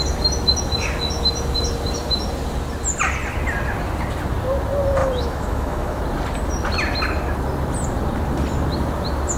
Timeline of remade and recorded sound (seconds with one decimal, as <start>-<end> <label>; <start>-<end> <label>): 0.0-5.0 recorded; 5.0-6.0 remade; 6.0-9.4 recorded